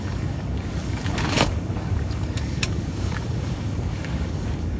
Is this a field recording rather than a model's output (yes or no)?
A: no